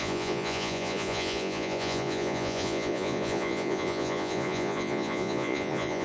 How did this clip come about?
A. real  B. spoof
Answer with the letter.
B